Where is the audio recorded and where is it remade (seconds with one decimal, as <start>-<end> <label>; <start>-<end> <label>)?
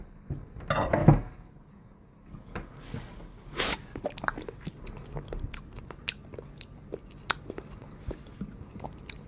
0.0-1.0 recorded; 1.0-4.0 remade; 4.0-9.3 recorded